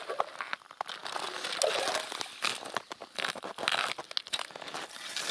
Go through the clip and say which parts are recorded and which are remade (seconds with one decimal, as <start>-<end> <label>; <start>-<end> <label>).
0.0-5.3 recorded